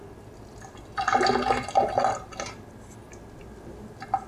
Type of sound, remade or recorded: recorded